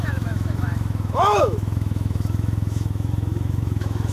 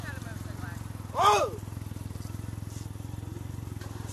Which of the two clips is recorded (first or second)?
second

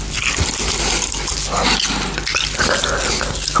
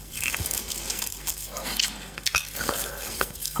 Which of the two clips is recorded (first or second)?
first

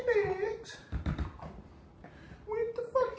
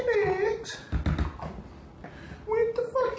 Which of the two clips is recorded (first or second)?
second